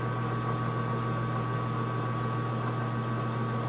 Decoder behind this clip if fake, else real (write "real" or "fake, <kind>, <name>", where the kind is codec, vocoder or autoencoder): real